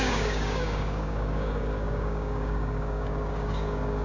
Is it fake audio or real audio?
fake